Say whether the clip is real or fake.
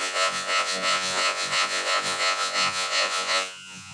fake